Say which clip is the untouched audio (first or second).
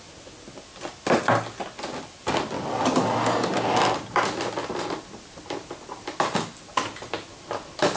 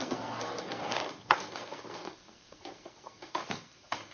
first